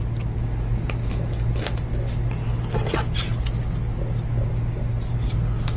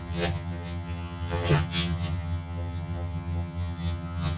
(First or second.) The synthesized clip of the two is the second